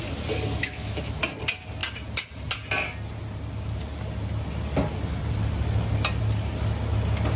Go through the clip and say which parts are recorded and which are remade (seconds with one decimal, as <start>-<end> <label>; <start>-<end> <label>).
0.0-0.6 recorded; 0.6-1.2 remade; 1.2-7.4 recorded